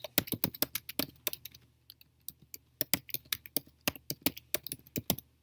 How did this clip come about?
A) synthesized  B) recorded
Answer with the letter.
B